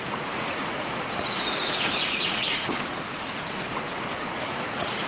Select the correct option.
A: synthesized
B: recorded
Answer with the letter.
A